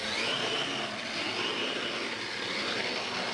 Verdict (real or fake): real